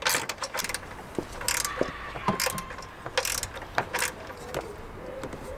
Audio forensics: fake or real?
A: real